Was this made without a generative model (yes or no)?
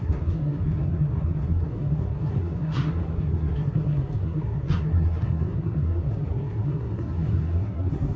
no